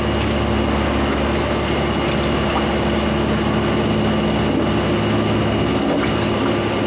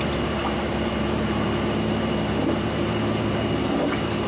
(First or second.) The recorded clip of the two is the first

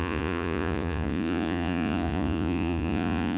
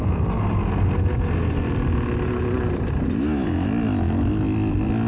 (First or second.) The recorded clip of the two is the second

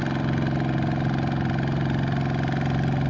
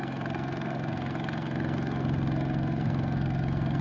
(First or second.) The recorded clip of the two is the first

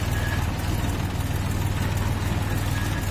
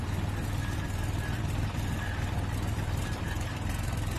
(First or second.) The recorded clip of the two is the first